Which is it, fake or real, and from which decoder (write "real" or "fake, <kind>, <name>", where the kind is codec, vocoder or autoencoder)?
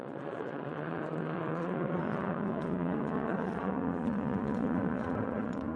fake, vocoder, Vocos